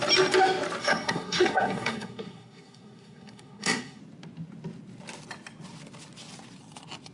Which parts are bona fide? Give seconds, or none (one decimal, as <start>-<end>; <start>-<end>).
0.0-0.8; 4.0-7.1